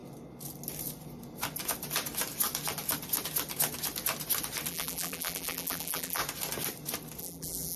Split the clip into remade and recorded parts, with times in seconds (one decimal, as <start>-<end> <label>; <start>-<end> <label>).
0.0-4.7 recorded; 4.7-6.2 remade; 6.2-7.2 recorded; 7.2-7.8 remade